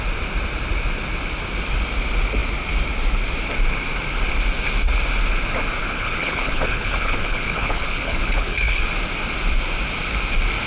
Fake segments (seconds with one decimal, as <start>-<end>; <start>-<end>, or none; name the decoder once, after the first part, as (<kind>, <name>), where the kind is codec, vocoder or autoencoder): 5.8-8.8 (codec, HILCodec)